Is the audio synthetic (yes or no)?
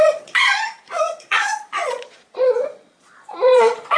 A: yes